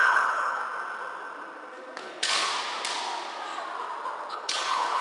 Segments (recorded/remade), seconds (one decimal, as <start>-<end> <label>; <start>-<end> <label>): 0.0-0.6 remade; 0.6-2.0 recorded; 2.0-2.5 remade; 2.5-4.3 recorded; 4.3-5.0 remade